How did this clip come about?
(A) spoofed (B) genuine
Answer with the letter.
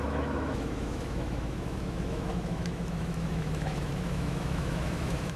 A